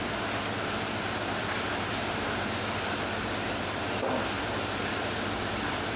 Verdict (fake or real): real